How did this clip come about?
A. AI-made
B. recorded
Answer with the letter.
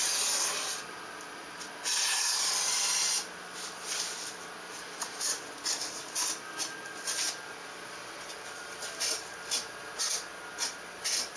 B